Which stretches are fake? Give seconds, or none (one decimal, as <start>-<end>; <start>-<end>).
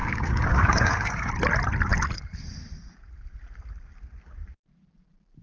0.0-1.3